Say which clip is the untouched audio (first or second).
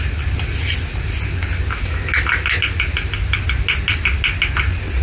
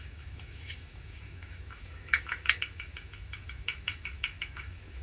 first